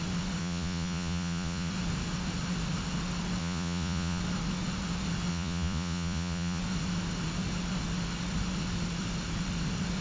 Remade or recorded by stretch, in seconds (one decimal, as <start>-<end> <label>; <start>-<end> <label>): 0.0-0.4 recorded; 0.4-1.7 remade; 1.7-3.4 recorded; 3.4-4.2 remade; 4.2-5.3 recorded; 5.3-6.6 remade; 6.6-10.0 recorded